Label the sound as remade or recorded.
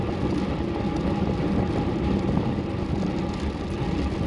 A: recorded